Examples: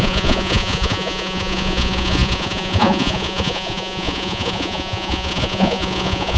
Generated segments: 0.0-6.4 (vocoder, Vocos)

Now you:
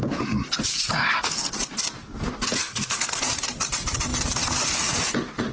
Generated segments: 0.7-1.5 (codec, SNAC); 2.6-3.2

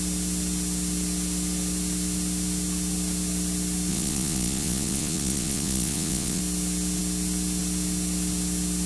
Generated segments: 3.9-6.4 (vocoder, Vocos)

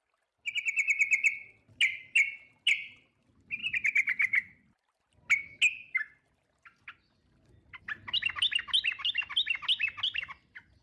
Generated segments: none

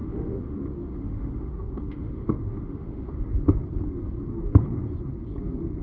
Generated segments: 0.0-3.2 (autoencoder, DAC-VAE)

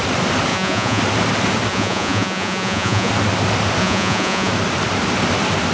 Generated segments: 0.5-1.0 (vocoder, Vocos); 1.7-3.1; 3.8-4.5